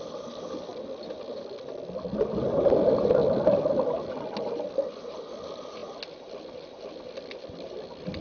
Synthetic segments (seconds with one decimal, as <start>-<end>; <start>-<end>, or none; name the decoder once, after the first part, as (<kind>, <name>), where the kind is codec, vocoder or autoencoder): none